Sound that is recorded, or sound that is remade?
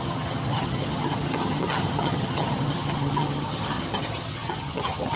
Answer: remade